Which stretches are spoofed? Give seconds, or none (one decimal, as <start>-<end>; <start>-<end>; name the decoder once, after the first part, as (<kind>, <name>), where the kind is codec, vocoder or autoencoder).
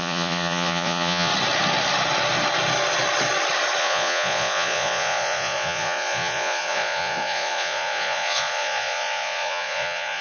0.0-1.3 (vocoder, Vocos); 3.8-10.2